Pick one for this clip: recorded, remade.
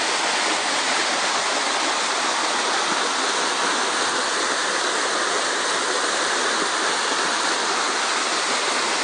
recorded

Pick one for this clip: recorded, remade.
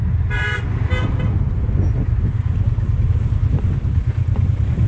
recorded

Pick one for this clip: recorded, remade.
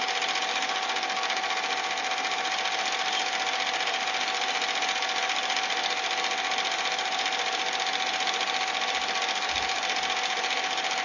recorded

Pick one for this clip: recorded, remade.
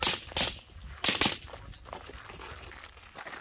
recorded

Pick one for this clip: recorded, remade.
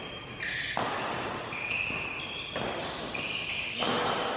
recorded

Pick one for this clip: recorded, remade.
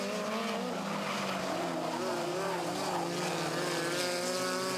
recorded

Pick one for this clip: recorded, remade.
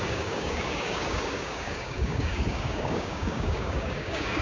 remade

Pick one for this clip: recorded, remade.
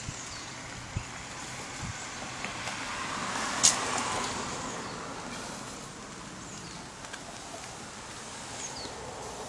recorded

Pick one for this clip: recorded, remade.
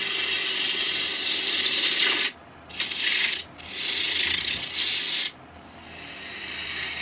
recorded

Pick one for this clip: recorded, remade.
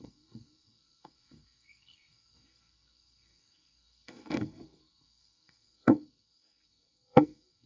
remade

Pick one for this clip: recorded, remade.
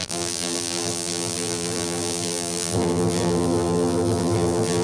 remade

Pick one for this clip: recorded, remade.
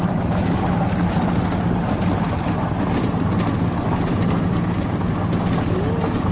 recorded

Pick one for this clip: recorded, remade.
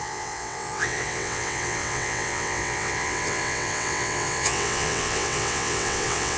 remade